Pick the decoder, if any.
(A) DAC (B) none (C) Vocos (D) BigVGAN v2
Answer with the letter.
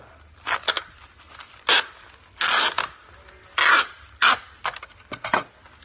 B